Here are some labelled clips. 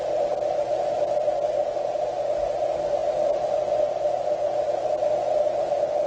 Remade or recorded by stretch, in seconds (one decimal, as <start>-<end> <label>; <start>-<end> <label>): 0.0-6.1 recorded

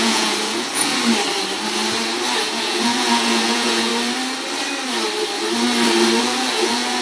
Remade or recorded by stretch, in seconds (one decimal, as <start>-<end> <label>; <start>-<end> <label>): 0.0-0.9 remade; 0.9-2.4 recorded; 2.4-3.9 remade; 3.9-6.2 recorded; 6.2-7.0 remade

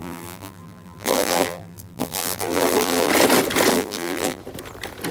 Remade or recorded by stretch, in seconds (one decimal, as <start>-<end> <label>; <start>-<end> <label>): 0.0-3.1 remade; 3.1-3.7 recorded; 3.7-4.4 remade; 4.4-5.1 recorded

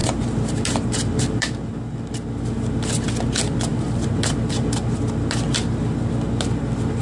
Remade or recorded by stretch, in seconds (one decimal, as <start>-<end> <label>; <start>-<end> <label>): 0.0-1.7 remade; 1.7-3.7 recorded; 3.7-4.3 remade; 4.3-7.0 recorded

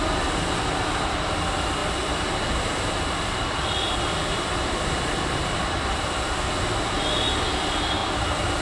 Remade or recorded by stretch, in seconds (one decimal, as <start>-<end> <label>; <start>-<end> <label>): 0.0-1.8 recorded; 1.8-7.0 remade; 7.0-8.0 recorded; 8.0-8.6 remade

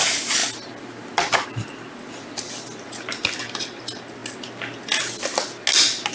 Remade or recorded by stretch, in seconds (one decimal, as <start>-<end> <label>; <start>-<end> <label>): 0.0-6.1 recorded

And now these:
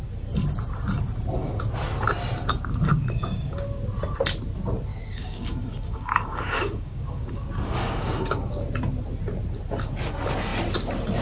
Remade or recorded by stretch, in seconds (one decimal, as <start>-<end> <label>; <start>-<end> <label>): 0.0-2.4 recorded; 2.4-3.7 remade; 3.7-4.9 recorded; 4.9-8.5 remade; 8.5-11.2 recorded

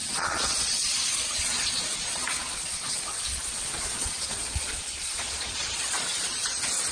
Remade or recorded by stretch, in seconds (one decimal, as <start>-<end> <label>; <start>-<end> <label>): 0.0-6.9 remade